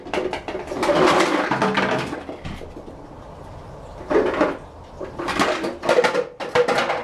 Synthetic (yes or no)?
no